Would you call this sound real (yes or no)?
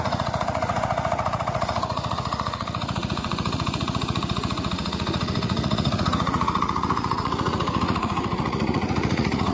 no